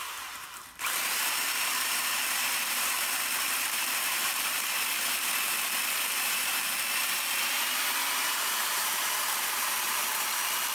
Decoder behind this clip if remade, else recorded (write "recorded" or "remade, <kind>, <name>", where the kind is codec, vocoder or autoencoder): remade, vocoder, BigVGAN v2